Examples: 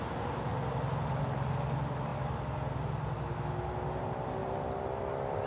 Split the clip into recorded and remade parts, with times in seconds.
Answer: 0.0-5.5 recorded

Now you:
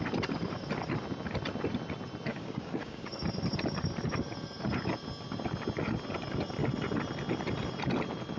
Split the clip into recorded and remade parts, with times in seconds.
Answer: 0.0-2.3 recorded; 2.3-3.1 remade; 3.1-8.4 recorded

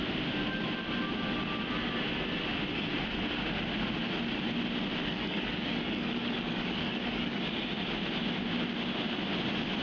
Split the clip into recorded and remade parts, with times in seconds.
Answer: 0.0-5.0 recorded; 5.0-7.4 remade; 7.4-9.8 recorded

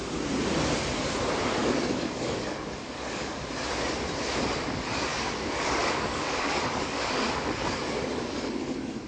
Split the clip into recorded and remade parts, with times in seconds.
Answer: 0.0-1.6 recorded; 1.6-3.4 remade; 3.4-5.1 recorded; 5.1-9.1 remade

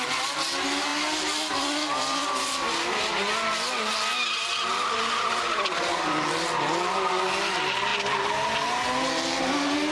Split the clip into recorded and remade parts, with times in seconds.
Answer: 0.0-9.9 recorded

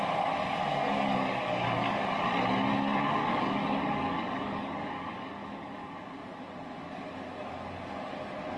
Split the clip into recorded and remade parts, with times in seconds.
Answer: 0.0-0.7 recorded; 0.7-2.2 remade; 2.2-2.7 recorded; 2.7-5.7 remade; 5.7-8.6 recorded